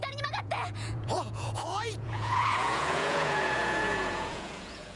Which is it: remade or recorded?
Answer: remade